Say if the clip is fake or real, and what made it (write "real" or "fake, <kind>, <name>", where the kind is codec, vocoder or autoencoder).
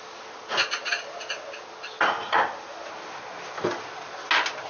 real